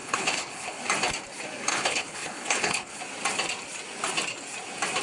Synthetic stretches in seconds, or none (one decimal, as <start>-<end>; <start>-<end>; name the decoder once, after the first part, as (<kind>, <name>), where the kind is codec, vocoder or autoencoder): 0.0-0.8 (codec, HILCodec); 1.7-3.0